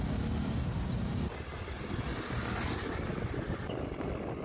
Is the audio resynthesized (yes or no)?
no